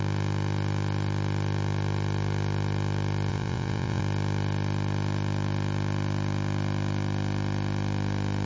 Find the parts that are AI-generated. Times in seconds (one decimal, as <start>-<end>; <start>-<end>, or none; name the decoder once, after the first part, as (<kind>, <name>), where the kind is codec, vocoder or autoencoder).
3.3-4.0 (vocoder, Vocos)